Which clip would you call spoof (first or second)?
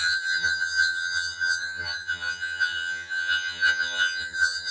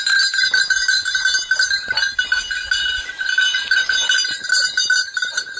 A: first